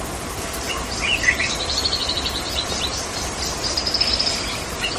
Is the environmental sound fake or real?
fake